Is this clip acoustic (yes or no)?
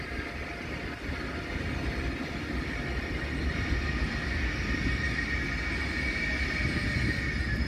yes